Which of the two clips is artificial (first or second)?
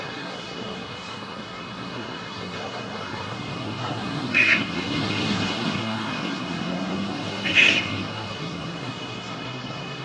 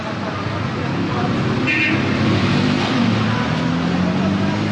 first